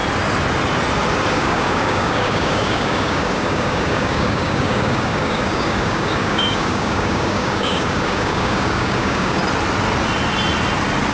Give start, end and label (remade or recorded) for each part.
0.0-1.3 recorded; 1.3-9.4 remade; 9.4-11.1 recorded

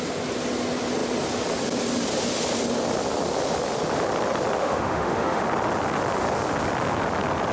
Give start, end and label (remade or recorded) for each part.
0.0-4.6 recorded; 4.6-5.4 remade; 5.4-7.5 recorded

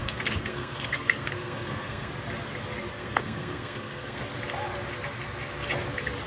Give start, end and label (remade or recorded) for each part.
0.0-2.1 remade; 2.1-2.9 recorded; 2.9-4.2 remade; 4.2-6.3 recorded